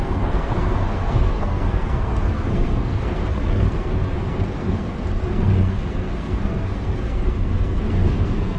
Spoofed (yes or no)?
yes